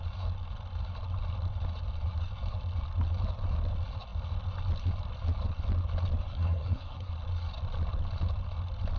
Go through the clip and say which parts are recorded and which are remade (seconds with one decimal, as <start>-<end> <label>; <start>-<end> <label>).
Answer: 0.0-6.2 recorded; 6.2-7.1 remade; 7.1-9.0 recorded